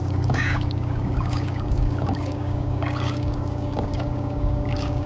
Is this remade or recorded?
remade